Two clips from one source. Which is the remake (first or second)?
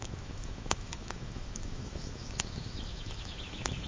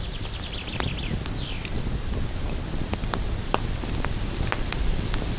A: first